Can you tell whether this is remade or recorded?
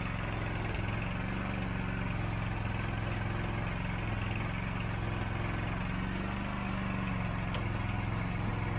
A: recorded